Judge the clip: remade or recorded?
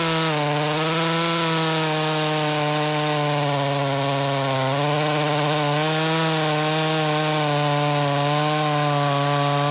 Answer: recorded